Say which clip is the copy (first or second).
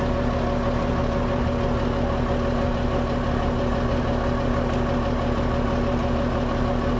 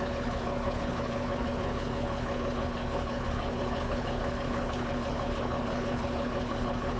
second